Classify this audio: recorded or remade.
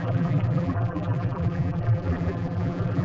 remade